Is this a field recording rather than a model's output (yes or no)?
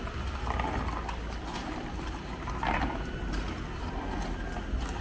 yes